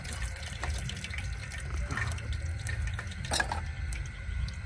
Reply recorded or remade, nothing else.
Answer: remade